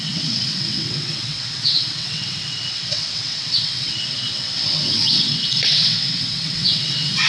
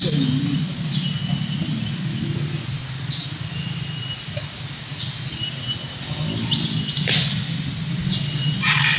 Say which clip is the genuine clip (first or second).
second